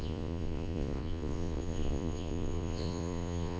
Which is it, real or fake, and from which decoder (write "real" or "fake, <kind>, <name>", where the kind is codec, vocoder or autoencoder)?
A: fake, vocoder, Vocos